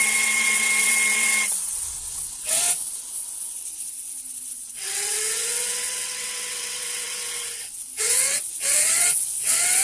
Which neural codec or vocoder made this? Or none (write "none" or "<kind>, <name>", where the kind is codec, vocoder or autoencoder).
vocoder, WaveNeXt